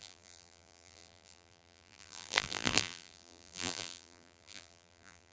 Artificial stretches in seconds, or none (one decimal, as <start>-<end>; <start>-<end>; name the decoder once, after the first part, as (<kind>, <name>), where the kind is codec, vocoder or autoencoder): 0.0-5.3 (vocoder, BigVGAN v2)